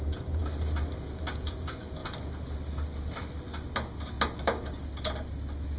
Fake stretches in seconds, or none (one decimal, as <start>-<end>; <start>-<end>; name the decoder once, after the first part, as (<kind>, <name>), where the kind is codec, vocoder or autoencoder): 0.0-0.4 (vocoder, Vocos); 1.3-2.0